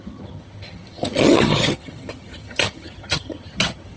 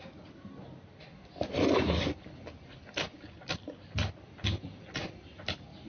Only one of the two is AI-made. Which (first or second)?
first